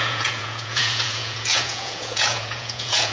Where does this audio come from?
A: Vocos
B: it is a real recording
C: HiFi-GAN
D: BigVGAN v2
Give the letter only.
A